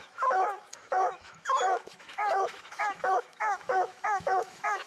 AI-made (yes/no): yes